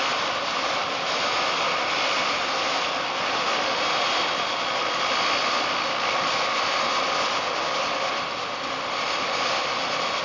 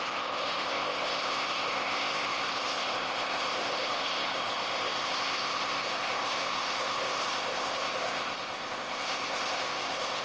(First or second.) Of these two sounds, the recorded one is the first